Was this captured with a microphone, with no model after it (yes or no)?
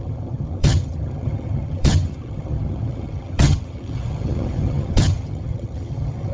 no